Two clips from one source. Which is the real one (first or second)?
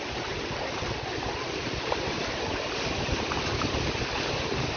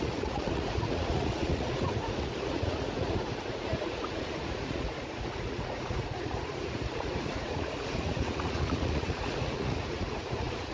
first